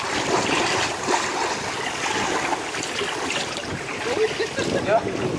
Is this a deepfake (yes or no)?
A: no